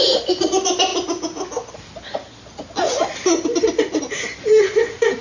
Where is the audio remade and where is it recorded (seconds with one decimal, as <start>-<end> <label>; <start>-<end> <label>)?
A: 0.0-5.2 recorded